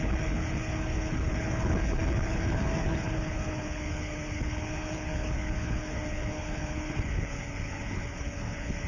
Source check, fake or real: fake